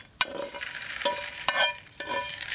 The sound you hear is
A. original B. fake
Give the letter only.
A